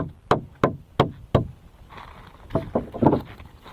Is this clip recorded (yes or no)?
yes